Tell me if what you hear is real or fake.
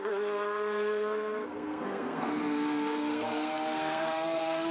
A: fake